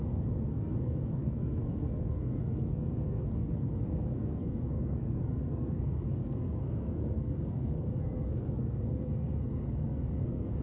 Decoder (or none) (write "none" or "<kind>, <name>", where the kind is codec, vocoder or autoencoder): codec, SNAC